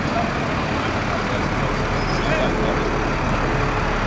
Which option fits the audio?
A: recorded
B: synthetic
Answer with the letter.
A